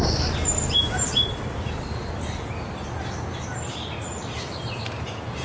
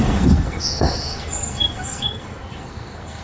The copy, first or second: second